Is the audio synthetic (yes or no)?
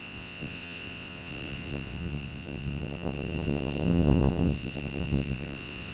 yes